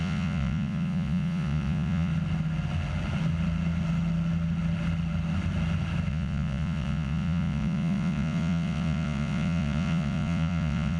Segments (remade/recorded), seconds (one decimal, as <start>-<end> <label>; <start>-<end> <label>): 0.0-2.1 remade; 2.1-6.1 recorded; 6.1-11.0 remade